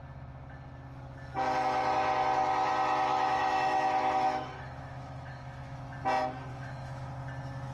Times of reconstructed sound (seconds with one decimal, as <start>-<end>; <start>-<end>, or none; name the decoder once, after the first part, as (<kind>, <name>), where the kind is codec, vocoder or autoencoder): 3.1-5.8 (autoencoder, DAC-VAE); 6.5-7.1